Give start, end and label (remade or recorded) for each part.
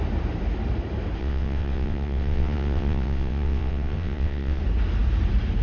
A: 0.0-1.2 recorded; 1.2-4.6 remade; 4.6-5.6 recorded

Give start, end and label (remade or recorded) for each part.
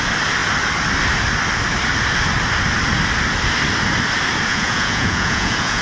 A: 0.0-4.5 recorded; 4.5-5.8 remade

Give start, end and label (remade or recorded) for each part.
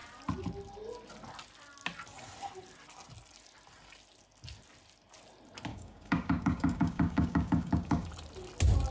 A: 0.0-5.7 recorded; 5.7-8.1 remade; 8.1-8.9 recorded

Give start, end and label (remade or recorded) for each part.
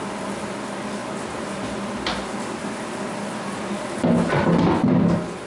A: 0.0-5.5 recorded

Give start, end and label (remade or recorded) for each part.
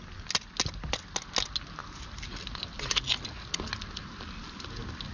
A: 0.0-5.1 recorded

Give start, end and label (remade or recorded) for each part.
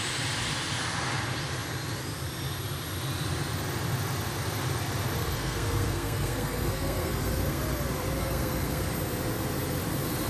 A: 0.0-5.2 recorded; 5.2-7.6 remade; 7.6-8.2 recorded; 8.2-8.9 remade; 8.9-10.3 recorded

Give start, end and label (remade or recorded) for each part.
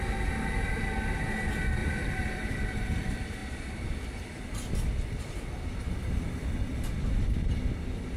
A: 0.0-1.8 recorded; 1.8-2.9 remade; 2.9-3.4 recorded; 3.4-5.2 remade; 5.2-6.4 recorded; 6.4-7.1 remade; 7.1-8.2 recorded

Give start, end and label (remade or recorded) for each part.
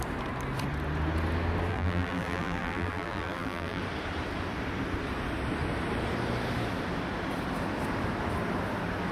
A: 0.0-1.7 recorded; 1.7-3.8 remade; 3.8-9.1 recorded